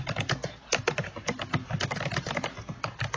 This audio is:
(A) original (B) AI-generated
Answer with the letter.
A